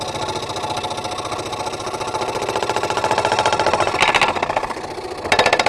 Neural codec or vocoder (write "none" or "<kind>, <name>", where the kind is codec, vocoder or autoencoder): none